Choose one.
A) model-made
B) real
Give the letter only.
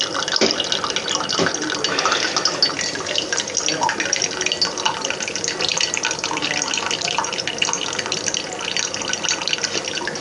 B